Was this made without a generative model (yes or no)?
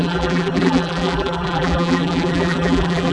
no